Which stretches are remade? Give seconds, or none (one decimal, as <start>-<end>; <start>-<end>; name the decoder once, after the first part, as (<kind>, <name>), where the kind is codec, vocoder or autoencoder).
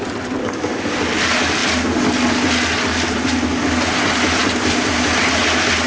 0.4-0.9 (codec, DAC)